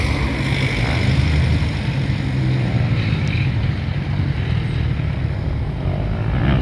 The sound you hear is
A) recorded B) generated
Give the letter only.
A